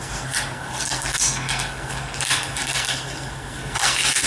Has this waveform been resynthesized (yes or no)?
yes